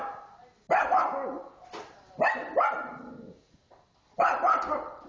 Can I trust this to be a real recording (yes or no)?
yes